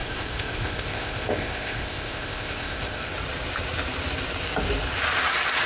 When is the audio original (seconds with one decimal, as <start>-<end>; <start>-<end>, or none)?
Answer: 3.1-5.7